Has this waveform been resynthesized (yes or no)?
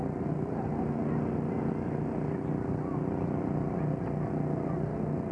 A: no